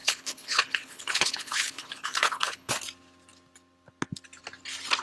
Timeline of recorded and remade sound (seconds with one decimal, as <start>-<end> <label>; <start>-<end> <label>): 0.0-2.7 remade; 2.7-5.0 recorded

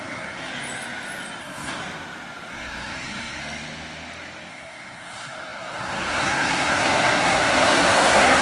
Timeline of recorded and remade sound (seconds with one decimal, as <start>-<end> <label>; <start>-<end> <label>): 0.0-0.5 remade; 0.5-1.4 recorded; 1.4-1.8 remade; 1.8-2.5 recorded; 2.5-3.4 remade; 3.4-4.5 recorded; 4.5-8.4 remade

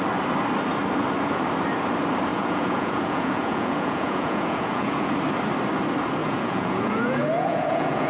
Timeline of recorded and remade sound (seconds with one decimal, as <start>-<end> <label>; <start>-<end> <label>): 0.0-2.3 recorded; 2.3-5.1 remade; 5.1-6.2 recorded; 6.2-8.1 remade

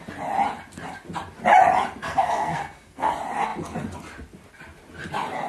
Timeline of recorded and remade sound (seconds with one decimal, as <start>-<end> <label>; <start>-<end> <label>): 0.0-2.0 recorded; 2.0-3.1 remade; 3.1-5.5 recorded

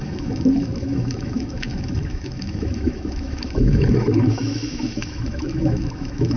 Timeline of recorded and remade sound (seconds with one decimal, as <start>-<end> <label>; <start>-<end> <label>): 0.0-6.4 remade

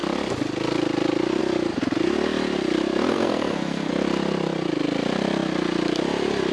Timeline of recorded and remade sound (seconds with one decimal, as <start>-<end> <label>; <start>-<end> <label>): 0.0-3.1 recorded; 3.1-3.9 remade; 3.9-6.5 recorded

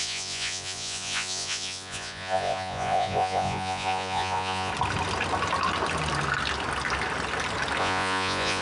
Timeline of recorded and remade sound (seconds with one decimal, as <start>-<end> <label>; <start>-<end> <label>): 0.0-4.7 remade; 4.7-7.8 recorded; 7.8-8.6 remade